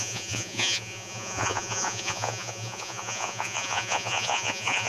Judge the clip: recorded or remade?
remade